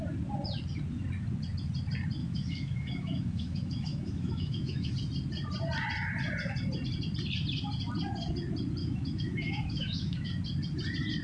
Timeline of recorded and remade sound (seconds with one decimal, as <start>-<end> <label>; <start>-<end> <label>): 0.0-2.2 recorded; 2.2-4.9 remade; 4.9-8.8 recorded; 8.8-10.3 remade; 10.3-11.2 recorded

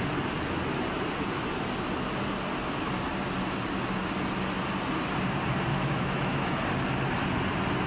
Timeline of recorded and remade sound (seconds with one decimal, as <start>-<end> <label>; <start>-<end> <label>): 0.0-5.7 recorded; 5.7-6.6 remade; 6.6-7.9 recorded